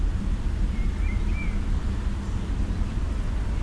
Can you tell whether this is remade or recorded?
recorded